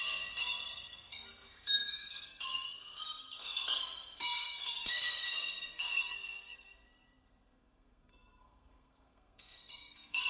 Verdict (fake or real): fake